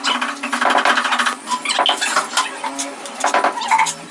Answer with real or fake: real